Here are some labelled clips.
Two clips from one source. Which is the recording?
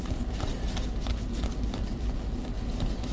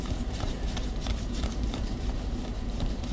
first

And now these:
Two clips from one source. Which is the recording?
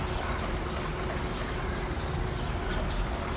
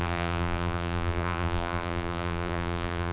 first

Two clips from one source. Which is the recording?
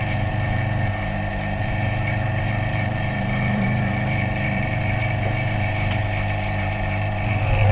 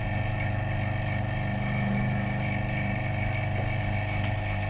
second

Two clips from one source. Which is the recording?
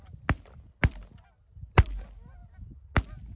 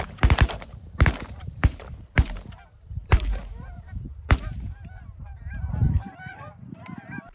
first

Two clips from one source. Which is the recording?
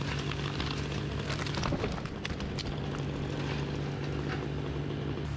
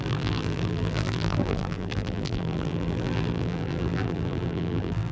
first